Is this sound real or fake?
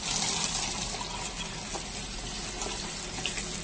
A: real